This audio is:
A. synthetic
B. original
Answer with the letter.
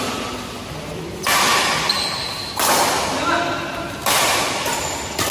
B